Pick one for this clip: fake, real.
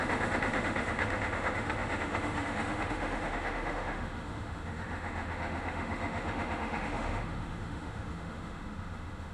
fake